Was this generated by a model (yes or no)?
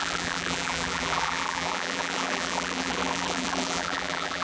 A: yes